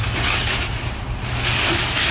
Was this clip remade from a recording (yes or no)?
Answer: no